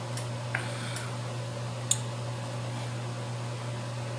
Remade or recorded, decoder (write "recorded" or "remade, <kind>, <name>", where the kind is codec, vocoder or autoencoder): recorded